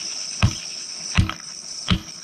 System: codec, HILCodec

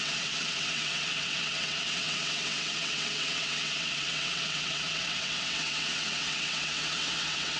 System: vocoder, WaveNeXt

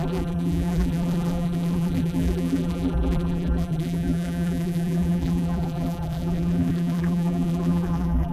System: vocoder, BigVGAN v2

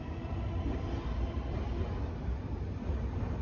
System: none